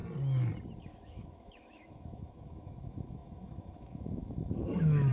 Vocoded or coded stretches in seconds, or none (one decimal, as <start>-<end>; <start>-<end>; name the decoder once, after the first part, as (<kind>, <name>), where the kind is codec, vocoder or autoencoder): 0.8-5.1 (autoencoder, DAC-VAE)